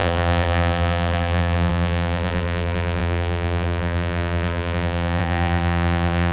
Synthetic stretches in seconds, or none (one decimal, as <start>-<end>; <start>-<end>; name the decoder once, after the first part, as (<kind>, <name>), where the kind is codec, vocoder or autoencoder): 0.0-6.3 (vocoder, BigVGAN v2)